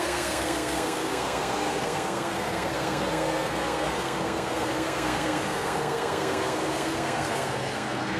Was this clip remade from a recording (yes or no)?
yes